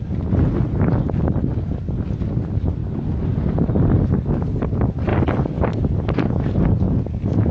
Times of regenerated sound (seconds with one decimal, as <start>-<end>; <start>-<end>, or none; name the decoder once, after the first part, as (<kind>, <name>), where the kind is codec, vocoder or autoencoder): none